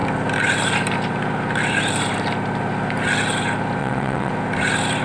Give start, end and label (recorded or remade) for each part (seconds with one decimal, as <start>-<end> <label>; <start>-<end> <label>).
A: 0.0-3.8 recorded; 3.8-4.3 remade; 4.3-5.0 recorded